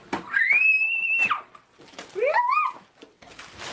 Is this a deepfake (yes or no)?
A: no